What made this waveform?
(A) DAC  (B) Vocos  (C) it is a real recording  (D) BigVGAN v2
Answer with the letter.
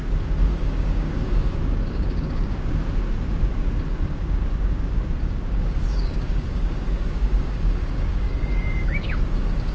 A